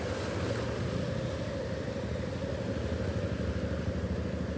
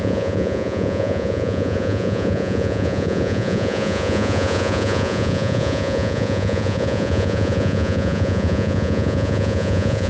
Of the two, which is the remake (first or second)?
second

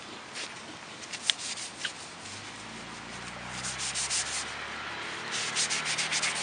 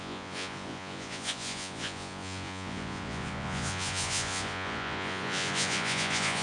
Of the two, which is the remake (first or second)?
second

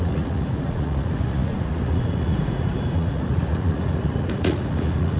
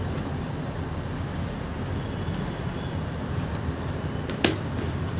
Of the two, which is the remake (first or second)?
first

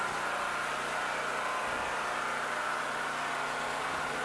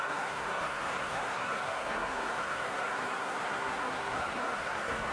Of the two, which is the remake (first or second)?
second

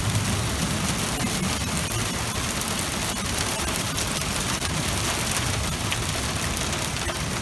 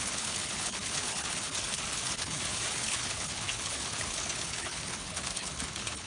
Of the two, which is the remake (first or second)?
second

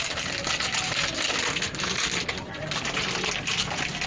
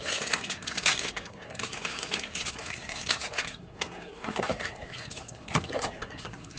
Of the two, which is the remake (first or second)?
second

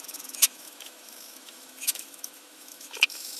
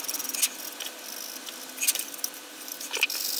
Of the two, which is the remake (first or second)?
first